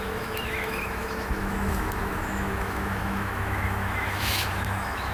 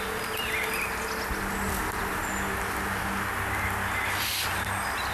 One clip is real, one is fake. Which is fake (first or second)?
first